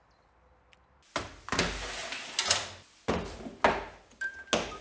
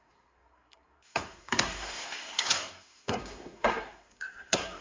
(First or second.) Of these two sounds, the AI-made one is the second